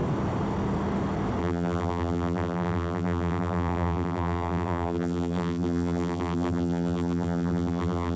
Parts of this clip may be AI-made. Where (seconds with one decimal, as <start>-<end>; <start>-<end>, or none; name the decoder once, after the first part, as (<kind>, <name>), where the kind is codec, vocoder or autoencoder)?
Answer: 1.4-8.2 (vocoder, BigVGAN v2)